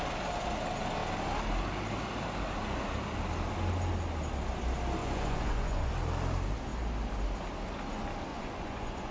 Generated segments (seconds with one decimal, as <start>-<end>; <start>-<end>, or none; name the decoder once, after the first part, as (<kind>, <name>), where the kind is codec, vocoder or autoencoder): 5.0-5.9 (vocoder, Vocos); 8.3-9.1